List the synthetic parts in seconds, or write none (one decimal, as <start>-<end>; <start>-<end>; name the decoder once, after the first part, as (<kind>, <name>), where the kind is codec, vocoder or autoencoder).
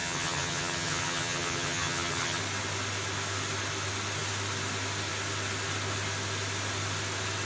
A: 0.0-2.4 (vocoder, HiFi-GAN)